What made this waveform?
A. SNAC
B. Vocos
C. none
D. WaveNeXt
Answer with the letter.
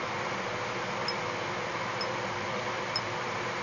C